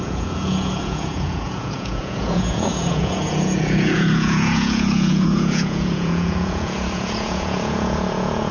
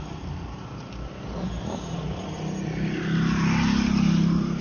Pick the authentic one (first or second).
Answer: second